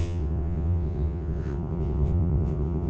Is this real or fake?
fake